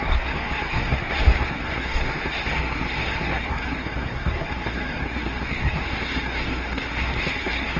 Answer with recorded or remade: remade